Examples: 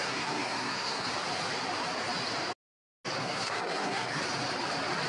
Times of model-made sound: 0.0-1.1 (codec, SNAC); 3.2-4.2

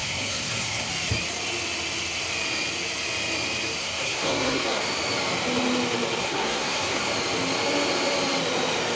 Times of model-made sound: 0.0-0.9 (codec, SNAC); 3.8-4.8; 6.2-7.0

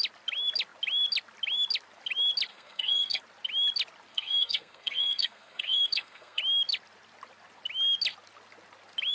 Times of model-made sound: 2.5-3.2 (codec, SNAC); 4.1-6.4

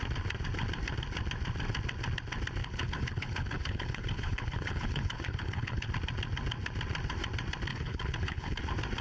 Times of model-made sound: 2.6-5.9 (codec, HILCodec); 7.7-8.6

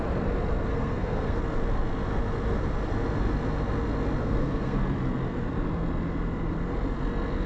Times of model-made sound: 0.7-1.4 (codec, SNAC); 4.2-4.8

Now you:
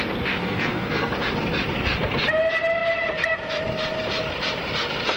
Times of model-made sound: 0.4-1.1 (codec, SNAC)

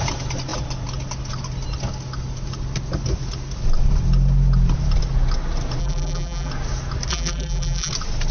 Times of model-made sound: 5.8-6.5 (vocoder, BigVGAN v2); 7.1-7.9

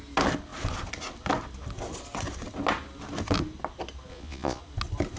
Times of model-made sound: 4.1-4.6 (vocoder, Vocos)